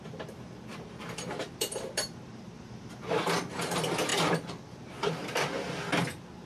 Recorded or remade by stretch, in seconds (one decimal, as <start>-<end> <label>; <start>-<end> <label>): 0.0-0.7 recorded; 0.7-2.9 remade; 2.9-6.5 recorded